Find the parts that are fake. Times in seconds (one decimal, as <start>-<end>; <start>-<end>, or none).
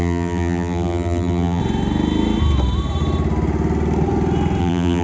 0.0-1.6; 4.6-5.0